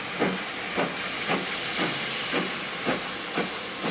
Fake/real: real